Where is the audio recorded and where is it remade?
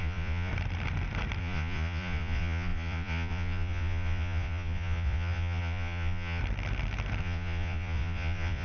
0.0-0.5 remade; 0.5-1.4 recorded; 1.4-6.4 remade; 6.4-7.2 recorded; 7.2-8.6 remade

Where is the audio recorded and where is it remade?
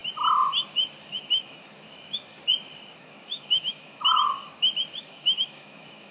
0.0-1.1 recorded; 1.1-1.7 remade; 1.7-3.0 recorded; 3.0-4.4 remade; 4.4-5.0 recorded; 5.0-6.1 remade